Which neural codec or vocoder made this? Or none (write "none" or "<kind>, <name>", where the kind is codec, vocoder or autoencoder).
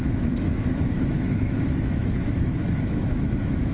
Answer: autoencoder, DAC-VAE